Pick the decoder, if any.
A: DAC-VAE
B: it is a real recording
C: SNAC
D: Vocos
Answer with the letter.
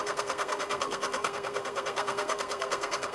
C